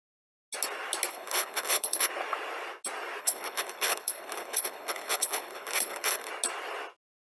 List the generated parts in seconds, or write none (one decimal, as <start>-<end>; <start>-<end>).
1.1-2.1; 3.2-6.3